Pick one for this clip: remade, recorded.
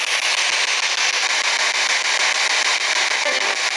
recorded